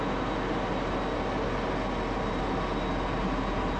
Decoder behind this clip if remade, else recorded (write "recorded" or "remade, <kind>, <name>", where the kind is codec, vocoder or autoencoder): recorded